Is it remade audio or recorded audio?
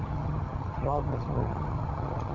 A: remade